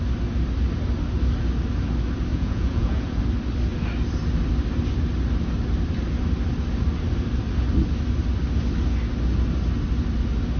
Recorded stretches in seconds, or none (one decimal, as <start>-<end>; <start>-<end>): 0.0-2.3; 3.2-10.6